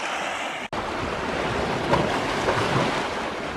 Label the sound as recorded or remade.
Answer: recorded